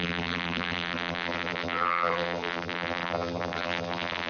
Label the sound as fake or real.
fake